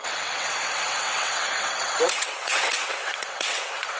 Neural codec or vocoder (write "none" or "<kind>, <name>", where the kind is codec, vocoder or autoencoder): vocoder, WaveNeXt